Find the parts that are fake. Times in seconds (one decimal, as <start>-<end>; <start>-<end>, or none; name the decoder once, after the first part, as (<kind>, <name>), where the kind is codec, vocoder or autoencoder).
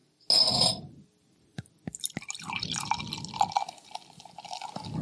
none